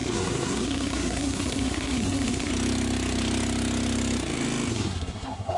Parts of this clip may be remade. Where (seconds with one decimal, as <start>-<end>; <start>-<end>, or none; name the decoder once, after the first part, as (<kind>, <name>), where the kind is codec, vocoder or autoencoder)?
0.0-2.5 (codec, SNAC); 4.7-5.6